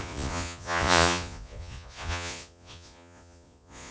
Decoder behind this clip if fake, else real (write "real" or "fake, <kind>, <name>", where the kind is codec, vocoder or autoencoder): fake, vocoder, Vocos